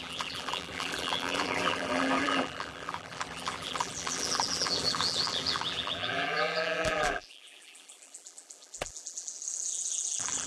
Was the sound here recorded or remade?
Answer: remade